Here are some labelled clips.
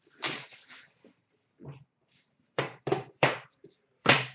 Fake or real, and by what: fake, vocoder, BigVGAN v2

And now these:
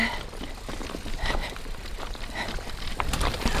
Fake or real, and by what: real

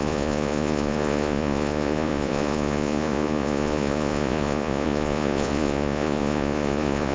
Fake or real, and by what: fake, vocoder, Vocos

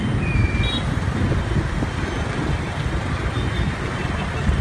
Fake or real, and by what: real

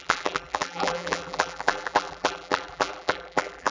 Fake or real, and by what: fake, vocoder, BigVGAN v2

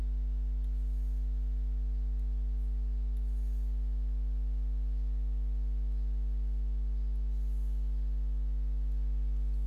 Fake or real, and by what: real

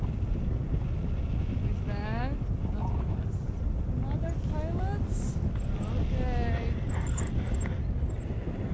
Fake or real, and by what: real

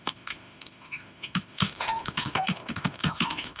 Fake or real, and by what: fake, autoencoder, DAC-VAE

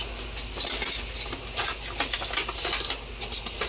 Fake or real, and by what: real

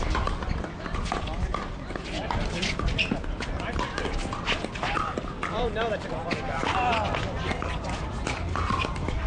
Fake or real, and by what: real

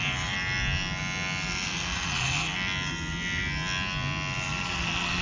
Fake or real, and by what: real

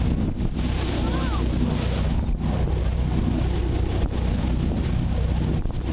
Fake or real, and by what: real